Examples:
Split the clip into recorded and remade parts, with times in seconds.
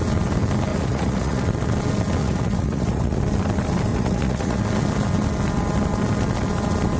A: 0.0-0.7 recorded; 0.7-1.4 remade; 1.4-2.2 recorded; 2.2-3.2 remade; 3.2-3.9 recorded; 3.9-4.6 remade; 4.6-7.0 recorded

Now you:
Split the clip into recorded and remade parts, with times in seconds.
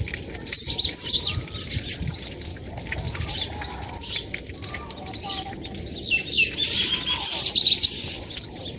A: 0.0-8.8 recorded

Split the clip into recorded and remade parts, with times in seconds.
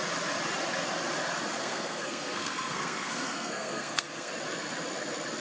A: 0.0-1.6 recorded; 1.6-4.3 remade; 4.3-5.4 recorded